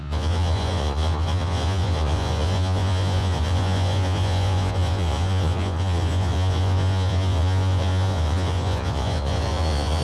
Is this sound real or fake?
fake